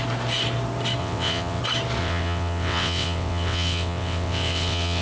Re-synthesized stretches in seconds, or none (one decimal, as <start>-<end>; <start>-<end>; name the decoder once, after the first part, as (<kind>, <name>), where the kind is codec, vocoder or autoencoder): 1.0-1.6 (vocoder, WaveNeXt); 2.0-5.0